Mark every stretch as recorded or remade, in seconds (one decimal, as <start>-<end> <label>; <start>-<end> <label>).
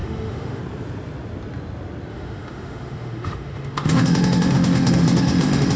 0.0-0.6 remade; 0.6-2.1 recorded; 2.1-5.8 remade